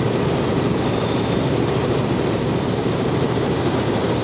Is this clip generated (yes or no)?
yes